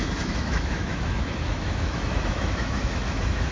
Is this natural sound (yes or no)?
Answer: no